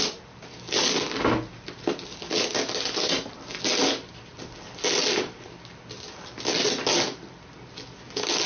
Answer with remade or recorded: recorded